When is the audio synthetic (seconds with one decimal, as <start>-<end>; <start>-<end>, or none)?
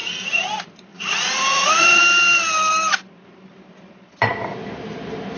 0.0-0.5; 0.9-2.0